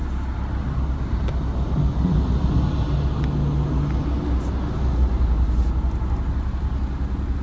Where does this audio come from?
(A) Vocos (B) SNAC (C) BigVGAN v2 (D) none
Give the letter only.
D